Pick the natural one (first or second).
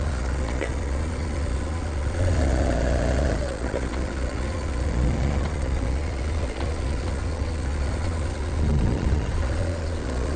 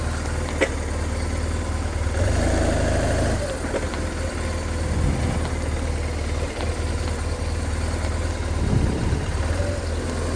second